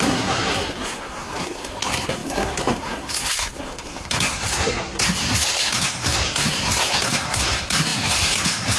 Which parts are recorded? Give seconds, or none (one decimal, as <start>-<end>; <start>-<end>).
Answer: none